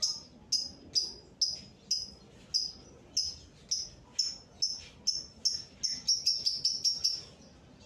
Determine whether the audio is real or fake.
real